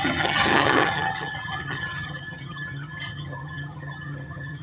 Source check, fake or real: fake